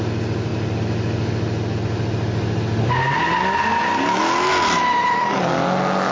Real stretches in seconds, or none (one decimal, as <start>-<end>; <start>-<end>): 0.0-6.1

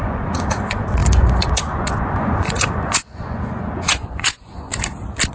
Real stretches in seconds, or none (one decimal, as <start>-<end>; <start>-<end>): 4.7-5.3

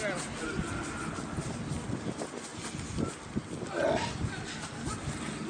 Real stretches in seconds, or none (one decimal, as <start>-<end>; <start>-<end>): 0.0-5.5